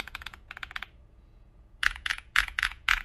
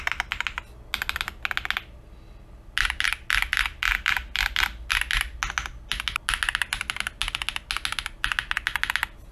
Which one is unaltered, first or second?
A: second